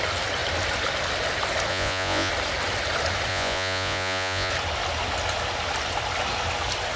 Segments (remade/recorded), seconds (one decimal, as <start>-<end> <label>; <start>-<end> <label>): 0.0-1.7 recorded; 1.7-2.3 remade; 2.3-3.3 recorded; 3.3-4.5 remade; 4.5-7.0 recorded